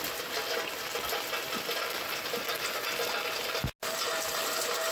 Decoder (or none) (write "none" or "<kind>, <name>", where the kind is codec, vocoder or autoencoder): none